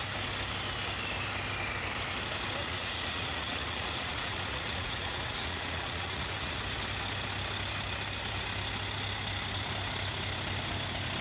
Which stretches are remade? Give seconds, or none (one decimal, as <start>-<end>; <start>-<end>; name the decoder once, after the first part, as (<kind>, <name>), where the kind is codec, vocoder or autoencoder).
2.6-6.6 (vocoder, Vocos)